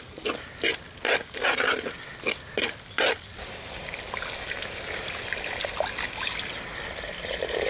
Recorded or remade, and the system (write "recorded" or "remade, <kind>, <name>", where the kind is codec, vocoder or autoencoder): recorded